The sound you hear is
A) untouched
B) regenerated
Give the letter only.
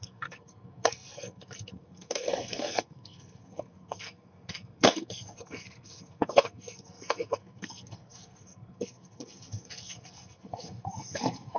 B